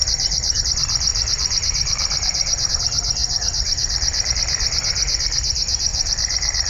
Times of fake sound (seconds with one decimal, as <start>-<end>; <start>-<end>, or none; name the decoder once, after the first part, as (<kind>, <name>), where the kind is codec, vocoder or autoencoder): 0.0-0.6 (vocoder, BigVGAN v2); 1.1-2.7; 3.2-4.3; 5.9-6.7